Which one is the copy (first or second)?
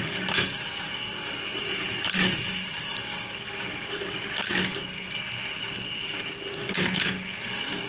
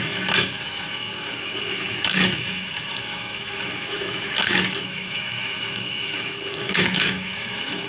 second